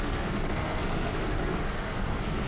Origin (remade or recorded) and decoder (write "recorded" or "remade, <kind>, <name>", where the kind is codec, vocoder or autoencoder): remade, codec, SNAC